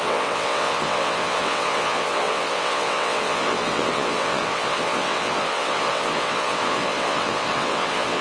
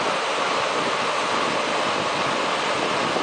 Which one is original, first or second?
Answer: second